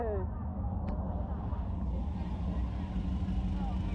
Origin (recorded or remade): recorded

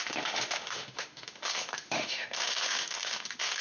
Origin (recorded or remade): remade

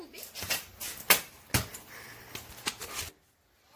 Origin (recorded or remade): recorded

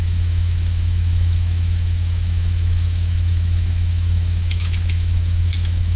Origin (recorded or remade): remade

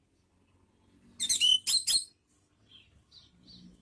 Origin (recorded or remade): recorded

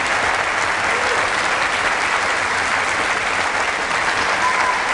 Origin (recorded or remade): recorded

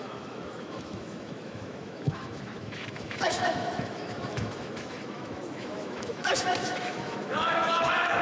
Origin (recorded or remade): remade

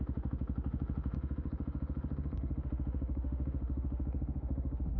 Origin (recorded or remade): remade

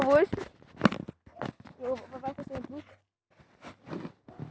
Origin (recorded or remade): recorded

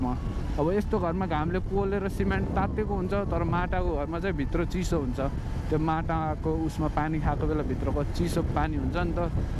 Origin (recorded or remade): recorded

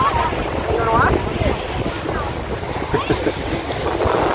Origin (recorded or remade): recorded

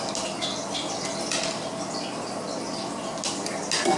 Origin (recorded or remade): recorded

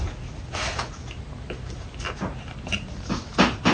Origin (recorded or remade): recorded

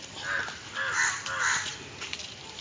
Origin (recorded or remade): recorded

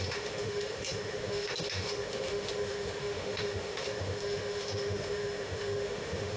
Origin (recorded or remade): remade